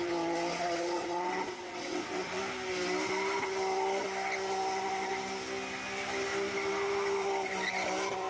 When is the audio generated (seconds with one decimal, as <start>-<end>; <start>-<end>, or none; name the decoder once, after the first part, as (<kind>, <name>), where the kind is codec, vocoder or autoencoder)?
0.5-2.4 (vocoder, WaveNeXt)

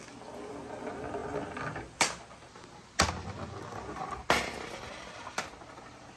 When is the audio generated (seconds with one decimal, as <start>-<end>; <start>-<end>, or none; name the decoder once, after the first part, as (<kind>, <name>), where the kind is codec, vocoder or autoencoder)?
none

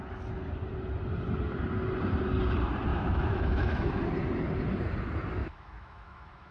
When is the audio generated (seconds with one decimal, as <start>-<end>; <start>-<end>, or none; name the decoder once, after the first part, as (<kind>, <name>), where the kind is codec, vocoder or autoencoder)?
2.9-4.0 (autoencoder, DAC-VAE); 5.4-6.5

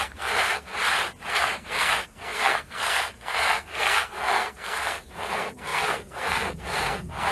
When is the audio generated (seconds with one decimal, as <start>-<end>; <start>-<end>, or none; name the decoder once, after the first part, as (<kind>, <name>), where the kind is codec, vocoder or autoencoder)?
0.0-0.7 (codec, SNAC); 1.3-7.3

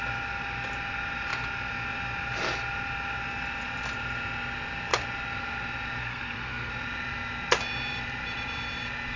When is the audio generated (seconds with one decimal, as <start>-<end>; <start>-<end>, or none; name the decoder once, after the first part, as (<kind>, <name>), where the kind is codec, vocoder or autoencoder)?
6.0-6.7 (codec, SNAC)